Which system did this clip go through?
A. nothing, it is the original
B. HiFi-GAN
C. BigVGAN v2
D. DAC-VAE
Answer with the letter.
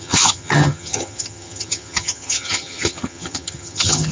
B